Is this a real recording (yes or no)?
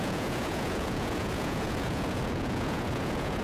no